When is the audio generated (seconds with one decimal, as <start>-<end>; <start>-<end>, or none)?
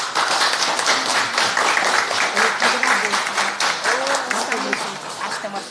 none